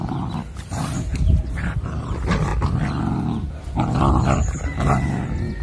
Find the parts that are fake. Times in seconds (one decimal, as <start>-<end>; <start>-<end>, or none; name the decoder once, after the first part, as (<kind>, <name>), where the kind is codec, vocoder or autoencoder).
0.0-1.1 (vocoder, BigVGAN v2); 1.7-2.5